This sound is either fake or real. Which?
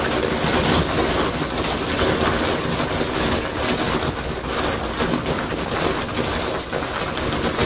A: real